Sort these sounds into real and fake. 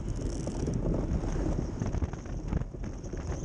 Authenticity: real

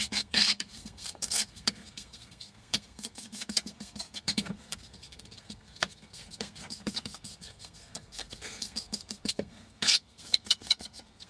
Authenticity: fake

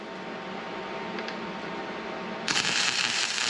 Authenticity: real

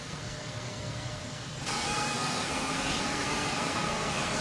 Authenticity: fake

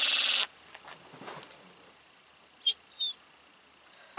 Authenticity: real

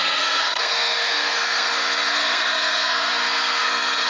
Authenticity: fake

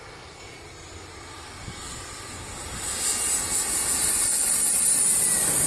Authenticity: real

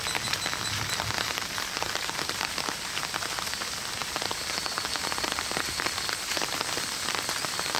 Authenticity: real